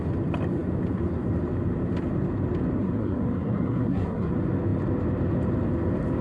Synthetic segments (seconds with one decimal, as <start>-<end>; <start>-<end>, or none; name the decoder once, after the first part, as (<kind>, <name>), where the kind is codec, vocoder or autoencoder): 2.8-4.3 (codec, SNAC)